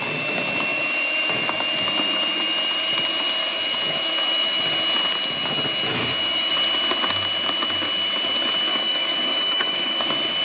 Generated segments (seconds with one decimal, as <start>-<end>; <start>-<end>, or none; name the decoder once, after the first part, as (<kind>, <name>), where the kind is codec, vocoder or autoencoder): 3.4-4.6 (autoencoder, DAC-VAE); 5.9-6.5; 8.7-10.0

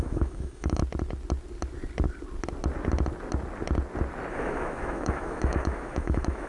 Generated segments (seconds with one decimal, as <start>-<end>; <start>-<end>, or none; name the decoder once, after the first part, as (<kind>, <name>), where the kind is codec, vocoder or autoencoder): 0.0-0.8 (autoencoder, DAC-VAE); 4.3-6.5

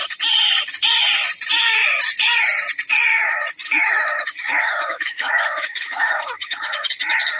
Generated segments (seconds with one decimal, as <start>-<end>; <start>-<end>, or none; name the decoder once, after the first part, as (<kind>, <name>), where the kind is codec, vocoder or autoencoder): 3.1-6.9 (autoencoder, DAC-VAE)

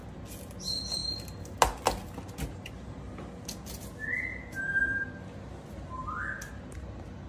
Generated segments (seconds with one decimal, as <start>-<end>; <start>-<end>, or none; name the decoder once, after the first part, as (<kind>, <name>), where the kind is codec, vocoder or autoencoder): none

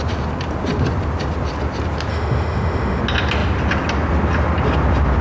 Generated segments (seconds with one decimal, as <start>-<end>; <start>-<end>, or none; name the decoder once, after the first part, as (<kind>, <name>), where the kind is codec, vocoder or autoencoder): 2.1-3.0 (autoencoder, DAC-VAE)

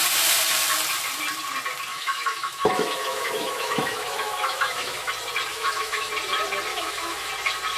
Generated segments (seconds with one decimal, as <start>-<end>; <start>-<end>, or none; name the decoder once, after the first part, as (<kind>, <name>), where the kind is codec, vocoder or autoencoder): 1.9-5.1 (autoencoder, DAC-VAE); 5.5-6.1; 6.7-7.3

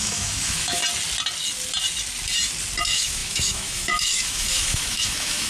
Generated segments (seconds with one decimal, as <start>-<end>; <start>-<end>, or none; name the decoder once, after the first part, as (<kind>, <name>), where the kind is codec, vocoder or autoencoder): 0.0-0.8 (autoencoder, DAC-VAE); 2.8-5.5

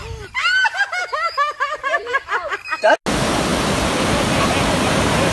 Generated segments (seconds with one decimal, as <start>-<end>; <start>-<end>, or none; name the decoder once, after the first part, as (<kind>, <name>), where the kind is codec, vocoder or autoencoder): 1.0-1.5 (autoencoder, DAC-VAE)